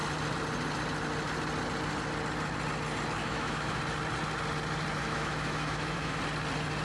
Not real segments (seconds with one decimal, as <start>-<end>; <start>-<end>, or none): 3.2-3.8; 5.0-6.2